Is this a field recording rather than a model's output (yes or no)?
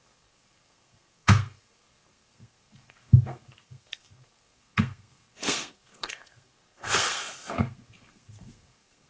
no